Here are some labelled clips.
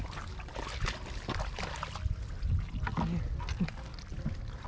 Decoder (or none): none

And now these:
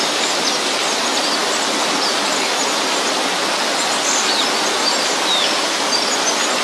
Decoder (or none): none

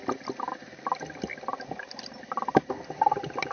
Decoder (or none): none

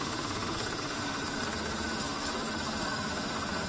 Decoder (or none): autoencoder, DAC-VAE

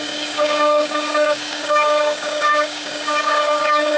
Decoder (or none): codec, DAC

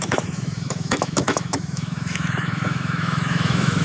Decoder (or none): autoencoder, DAC-VAE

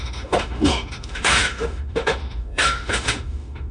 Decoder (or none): autoencoder, DAC-VAE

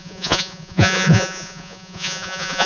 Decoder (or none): vocoder, Vocos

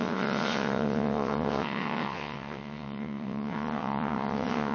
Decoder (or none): vocoder, WaveNeXt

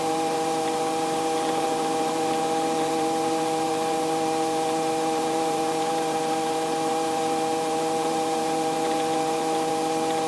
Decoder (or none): vocoder, BigVGAN v2